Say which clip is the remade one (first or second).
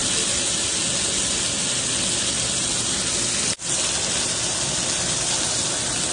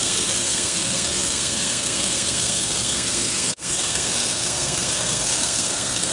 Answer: second